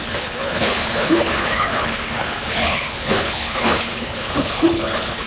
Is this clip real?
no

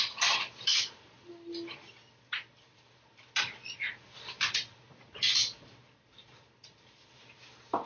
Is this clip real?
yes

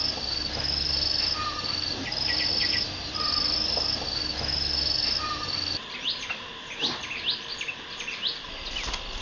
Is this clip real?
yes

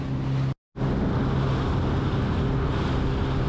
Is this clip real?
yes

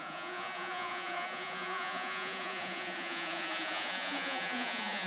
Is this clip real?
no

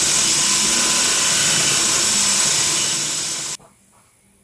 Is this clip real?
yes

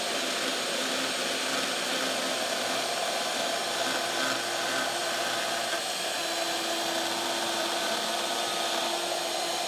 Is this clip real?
yes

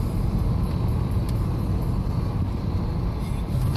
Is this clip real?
yes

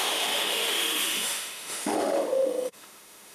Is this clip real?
no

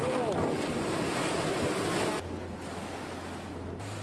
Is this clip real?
yes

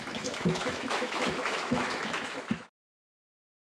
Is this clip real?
no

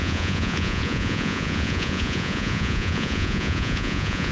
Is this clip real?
no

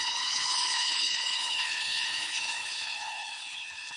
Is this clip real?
no